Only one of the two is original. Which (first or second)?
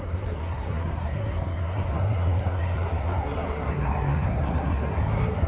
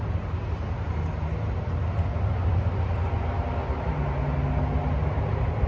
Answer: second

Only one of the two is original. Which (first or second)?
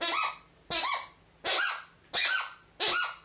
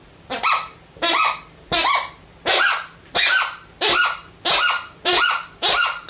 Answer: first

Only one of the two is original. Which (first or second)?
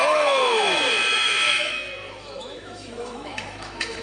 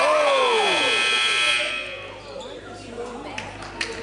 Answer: second